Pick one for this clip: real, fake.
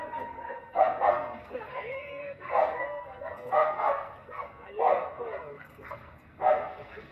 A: fake